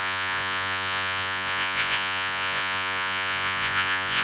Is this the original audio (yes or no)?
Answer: no